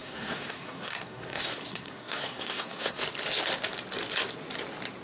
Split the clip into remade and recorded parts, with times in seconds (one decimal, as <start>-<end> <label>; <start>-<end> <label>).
0.0-3.0 remade; 3.0-5.0 recorded

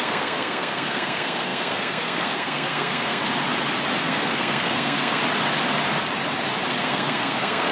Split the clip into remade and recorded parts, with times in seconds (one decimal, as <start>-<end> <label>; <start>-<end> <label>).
0.0-3.2 remade; 3.2-4.0 recorded; 4.0-5.2 remade; 5.2-6.7 recorded; 6.7-7.7 remade